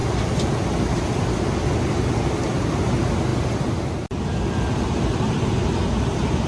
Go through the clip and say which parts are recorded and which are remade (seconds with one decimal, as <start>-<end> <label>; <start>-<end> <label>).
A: 0.0-6.5 recorded